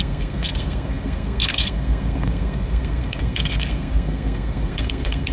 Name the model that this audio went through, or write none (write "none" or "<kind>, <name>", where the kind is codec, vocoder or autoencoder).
codec, SNAC